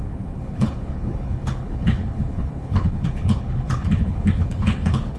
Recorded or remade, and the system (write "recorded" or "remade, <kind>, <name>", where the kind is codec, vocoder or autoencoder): remade, codec, HILCodec